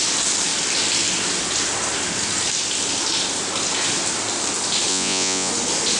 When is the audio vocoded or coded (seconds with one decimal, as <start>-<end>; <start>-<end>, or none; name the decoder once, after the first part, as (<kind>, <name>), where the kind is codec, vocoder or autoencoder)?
4.9-5.5 (vocoder, Vocos)